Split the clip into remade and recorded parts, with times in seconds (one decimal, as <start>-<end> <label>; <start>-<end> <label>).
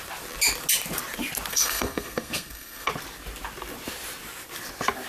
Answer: 0.0-1.5 recorded; 1.5-2.9 remade; 2.9-5.1 recorded